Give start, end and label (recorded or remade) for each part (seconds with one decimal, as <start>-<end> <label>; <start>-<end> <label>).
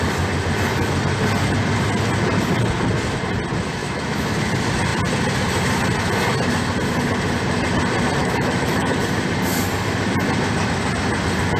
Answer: 0.0-3.8 recorded; 3.8-4.3 remade; 4.3-8.2 recorded; 8.2-9.0 remade; 9.0-11.6 recorded